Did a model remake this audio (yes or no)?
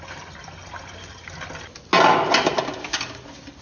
no